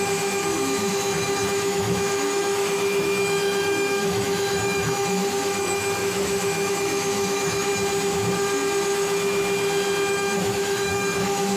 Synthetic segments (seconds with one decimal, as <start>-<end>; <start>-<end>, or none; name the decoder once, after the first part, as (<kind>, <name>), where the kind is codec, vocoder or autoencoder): 0.0-7.7 (autoencoder, DAC-VAE); 10.1-11.6